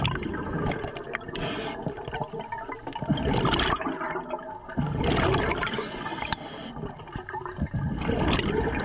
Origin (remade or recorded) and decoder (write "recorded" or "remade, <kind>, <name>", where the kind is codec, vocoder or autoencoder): recorded